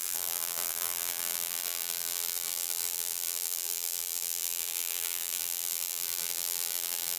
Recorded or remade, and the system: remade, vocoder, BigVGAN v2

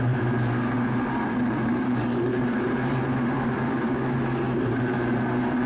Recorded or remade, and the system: remade, vocoder, BigVGAN v2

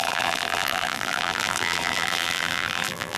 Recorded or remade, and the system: remade, vocoder, BigVGAN v2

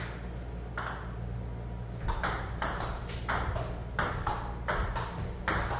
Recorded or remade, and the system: recorded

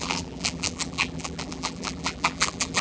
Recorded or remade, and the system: remade, vocoder, BigVGAN v2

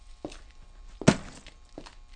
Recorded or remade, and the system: recorded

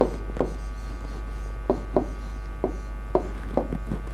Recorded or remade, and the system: recorded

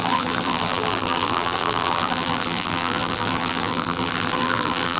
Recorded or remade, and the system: remade, vocoder, BigVGAN v2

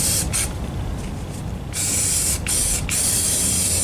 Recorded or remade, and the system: remade, vocoder, BigVGAN v2